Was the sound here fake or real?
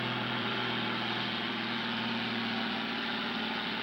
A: fake